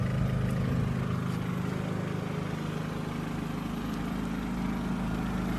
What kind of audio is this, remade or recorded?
recorded